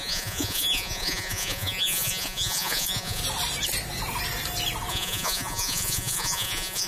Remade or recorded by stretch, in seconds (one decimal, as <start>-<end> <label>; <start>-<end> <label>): 0.0-3.2 remade; 3.2-4.9 recorded; 4.9-6.9 remade